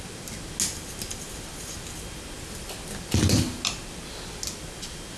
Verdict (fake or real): real